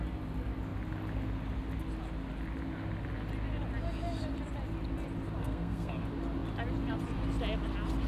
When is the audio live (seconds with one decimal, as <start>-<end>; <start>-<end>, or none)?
0.0-5.4; 5.9-8.1